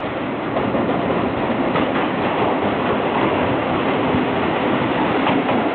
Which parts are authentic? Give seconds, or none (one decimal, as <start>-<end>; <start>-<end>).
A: 0.0-5.7